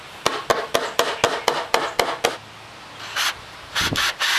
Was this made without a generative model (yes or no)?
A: yes